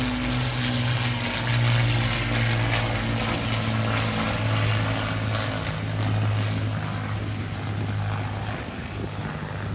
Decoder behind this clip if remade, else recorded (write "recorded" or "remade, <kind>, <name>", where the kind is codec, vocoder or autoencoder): recorded